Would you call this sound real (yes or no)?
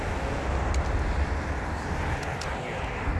yes